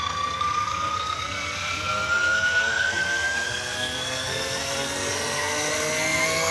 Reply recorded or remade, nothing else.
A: remade